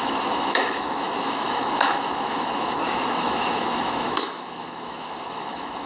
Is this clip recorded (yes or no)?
no